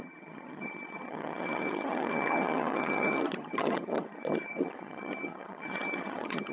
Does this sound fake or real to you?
fake